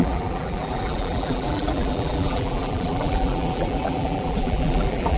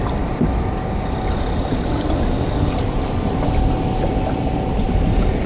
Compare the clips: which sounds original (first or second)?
second